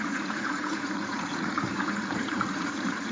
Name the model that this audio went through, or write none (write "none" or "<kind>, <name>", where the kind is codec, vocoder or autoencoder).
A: vocoder, Vocos